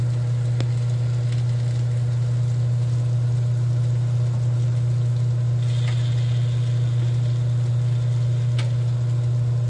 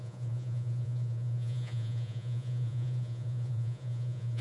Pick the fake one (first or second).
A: second